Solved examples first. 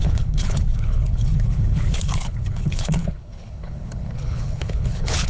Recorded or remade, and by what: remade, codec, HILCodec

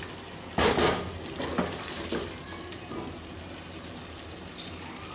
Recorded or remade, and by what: recorded